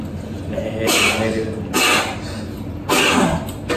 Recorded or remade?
recorded